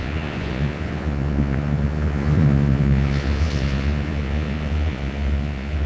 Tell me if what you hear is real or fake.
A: fake